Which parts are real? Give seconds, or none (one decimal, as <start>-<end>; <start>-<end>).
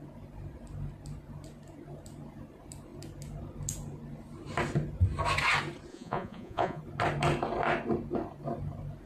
0.0-5.9; 6.8-9.1